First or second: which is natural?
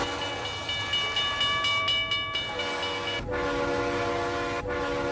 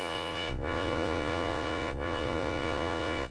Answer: first